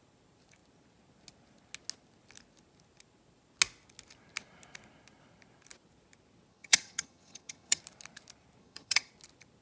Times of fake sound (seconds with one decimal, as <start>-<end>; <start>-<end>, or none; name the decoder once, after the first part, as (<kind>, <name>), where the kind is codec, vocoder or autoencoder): 6.5-7.8 (vocoder, HiFi-GAN); 8.6-9.1